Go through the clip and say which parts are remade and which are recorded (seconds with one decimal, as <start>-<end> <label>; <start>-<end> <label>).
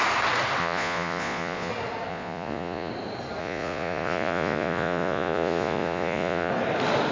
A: 0.0-0.6 recorded; 0.6-1.7 remade; 1.7-2.1 recorded; 2.1-2.9 remade; 2.9-3.4 recorded; 3.4-6.5 remade; 6.5-7.1 recorded